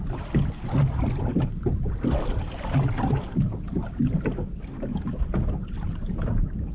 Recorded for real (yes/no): yes